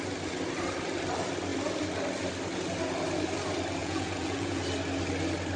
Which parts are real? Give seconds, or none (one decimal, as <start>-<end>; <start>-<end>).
0.0-3.8; 4.6-5.6